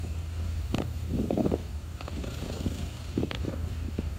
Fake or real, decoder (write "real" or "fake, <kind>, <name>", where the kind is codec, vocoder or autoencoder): fake, codec, DAC